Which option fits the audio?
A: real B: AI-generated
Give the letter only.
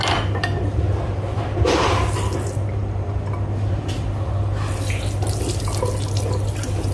A